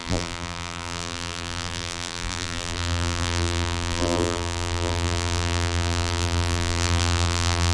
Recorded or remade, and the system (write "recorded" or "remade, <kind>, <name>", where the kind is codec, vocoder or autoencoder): remade, vocoder, BigVGAN v2